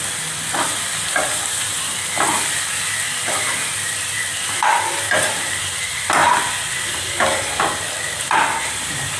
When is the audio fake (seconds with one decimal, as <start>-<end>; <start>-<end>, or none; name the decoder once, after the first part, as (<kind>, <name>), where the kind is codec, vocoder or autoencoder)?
none